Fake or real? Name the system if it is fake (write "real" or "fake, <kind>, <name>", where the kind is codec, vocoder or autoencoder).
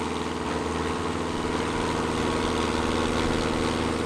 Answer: real